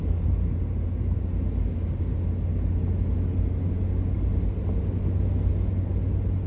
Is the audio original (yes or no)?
yes